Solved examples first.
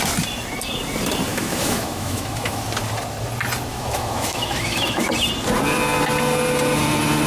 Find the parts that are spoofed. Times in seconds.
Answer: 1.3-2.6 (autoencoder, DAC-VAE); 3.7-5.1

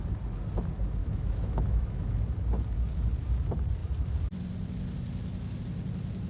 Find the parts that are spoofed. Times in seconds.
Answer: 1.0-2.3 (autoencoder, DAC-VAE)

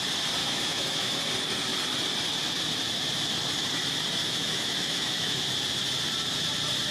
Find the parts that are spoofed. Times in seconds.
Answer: 0.4-1.2 (autoencoder, DAC-VAE); 4.2-5.4

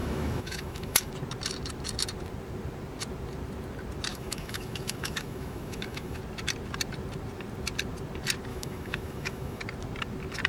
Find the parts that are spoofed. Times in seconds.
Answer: 0.0-1.1 (autoencoder, DAC-VAE); 4.1-6.2; 8.5-9.6